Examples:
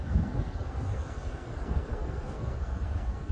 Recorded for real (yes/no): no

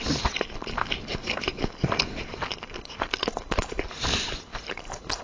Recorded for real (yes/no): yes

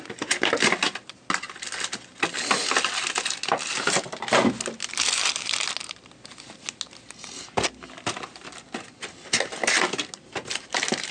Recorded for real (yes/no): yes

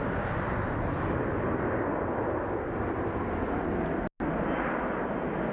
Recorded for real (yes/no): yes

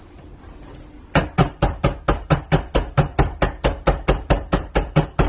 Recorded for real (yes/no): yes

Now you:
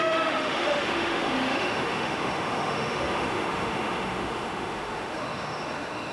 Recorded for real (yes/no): no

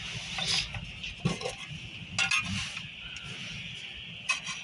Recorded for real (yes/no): yes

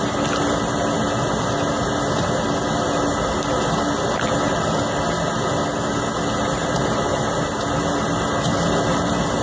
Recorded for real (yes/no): yes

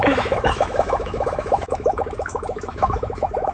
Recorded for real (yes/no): no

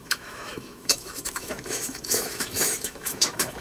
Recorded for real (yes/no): no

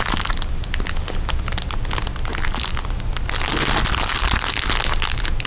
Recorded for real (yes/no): yes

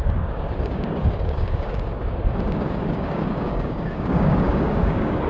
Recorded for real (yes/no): no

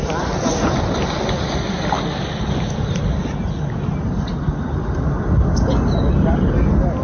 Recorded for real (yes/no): yes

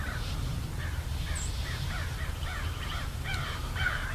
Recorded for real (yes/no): no